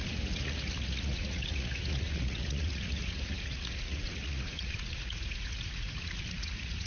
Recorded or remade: remade